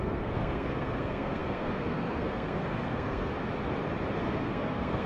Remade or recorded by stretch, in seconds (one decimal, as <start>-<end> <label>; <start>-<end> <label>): 0.0-3.3 remade; 3.3-4.2 recorded; 4.2-5.1 remade